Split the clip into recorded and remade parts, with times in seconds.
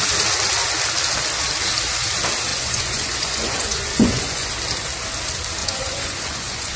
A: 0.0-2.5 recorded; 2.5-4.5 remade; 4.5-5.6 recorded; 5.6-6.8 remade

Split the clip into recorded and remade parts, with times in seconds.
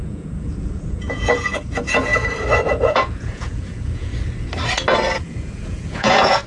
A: 0.0-2.1 remade; 2.1-2.7 recorded; 2.7-4.1 remade; 4.1-5.2 recorded; 5.2-6.5 remade